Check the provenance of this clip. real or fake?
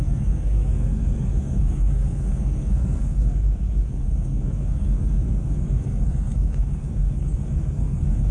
fake